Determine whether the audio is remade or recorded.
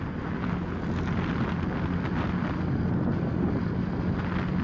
recorded